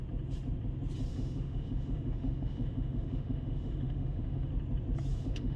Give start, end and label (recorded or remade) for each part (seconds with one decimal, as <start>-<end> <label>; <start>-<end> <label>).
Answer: 0.0-1.1 recorded; 1.1-4.5 remade; 4.5-5.1 recorded; 5.1-5.6 remade